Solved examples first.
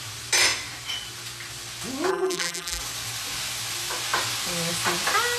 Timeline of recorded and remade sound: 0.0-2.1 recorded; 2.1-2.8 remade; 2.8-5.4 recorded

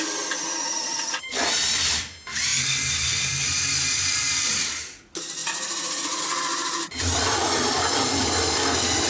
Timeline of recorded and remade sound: 0.0-0.7 recorded; 0.7-1.3 remade; 1.3-2.5 recorded; 2.5-3.1 remade; 3.1-4.2 recorded; 4.2-5.0 remade; 5.0-5.4 recorded; 5.4-6.2 remade; 6.2-9.1 recorded

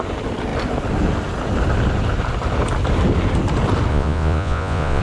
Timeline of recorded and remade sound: 0.0-3.9 recorded; 3.9-5.0 remade

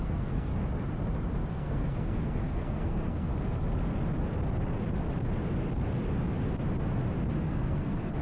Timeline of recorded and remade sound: 0.0-0.5 remade; 0.5-1.5 recorded; 1.5-3.3 remade; 3.3-7.4 recorded; 7.4-8.2 remade

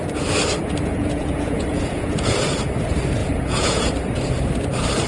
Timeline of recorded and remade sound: 0.0-0.9 recorded; 0.9-2.7 remade; 2.7-3.2 recorded; 3.2-3.9 remade; 3.9-5.1 recorded